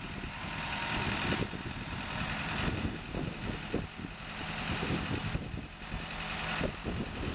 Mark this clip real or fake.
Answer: real